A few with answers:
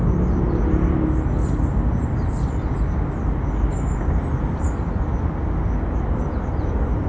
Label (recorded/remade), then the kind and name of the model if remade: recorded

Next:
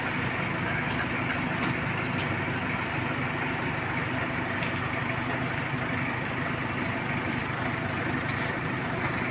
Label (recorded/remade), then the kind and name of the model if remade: recorded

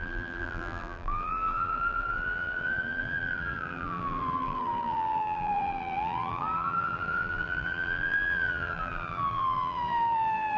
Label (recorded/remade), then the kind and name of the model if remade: remade, vocoder, BigVGAN v2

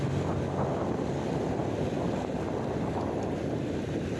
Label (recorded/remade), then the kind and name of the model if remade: recorded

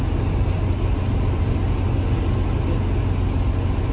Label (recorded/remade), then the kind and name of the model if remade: recorded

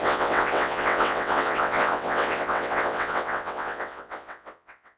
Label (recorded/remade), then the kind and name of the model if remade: remade, vocoder, WaveNeXt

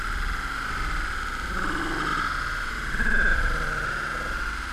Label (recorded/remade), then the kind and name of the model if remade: recorded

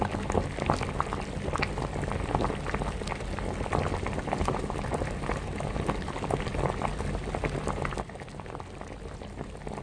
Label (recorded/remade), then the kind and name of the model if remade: recorded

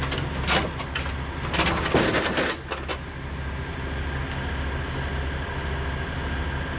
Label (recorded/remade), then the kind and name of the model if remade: recorded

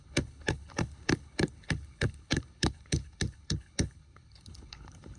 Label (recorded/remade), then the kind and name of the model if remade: remade, codec, HILCodec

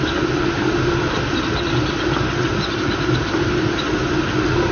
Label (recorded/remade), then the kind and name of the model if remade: recorded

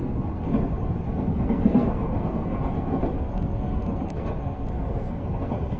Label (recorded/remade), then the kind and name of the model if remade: remade, codec, SNAC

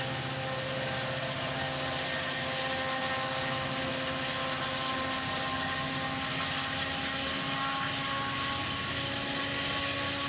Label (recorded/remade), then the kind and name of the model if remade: recorded